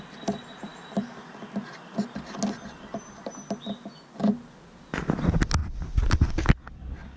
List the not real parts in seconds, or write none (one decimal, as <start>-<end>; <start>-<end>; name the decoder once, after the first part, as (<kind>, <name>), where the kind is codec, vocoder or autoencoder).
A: none